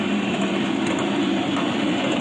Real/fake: fake